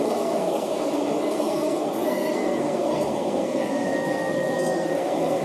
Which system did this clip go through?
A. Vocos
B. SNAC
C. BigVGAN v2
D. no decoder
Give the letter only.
B